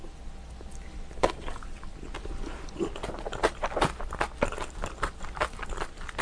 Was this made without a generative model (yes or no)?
yes